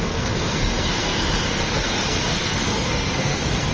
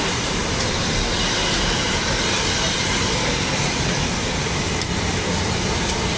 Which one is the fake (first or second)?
first